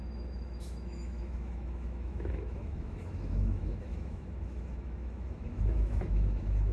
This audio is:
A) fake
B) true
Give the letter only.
A